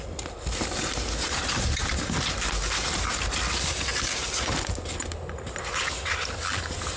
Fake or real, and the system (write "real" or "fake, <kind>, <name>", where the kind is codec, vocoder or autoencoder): real